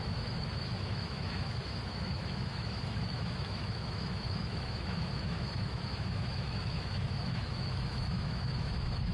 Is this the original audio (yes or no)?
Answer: no